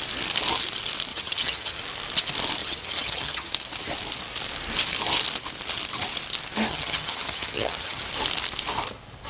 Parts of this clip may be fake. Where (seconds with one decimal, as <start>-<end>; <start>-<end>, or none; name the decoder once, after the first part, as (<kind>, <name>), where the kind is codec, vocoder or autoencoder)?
1.1-1.8 (vocoder, HiFi-GAN); 2.6-3.5; 6.7-8.0